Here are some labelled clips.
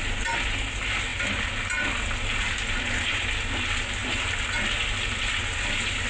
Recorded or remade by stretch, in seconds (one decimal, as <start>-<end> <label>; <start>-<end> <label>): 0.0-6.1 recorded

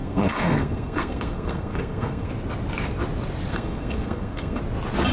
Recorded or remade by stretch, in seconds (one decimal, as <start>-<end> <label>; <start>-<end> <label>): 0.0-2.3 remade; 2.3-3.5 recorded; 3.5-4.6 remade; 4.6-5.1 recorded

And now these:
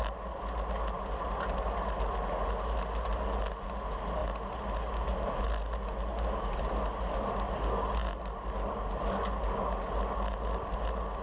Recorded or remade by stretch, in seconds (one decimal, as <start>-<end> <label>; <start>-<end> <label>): 0.0-11.2 recorded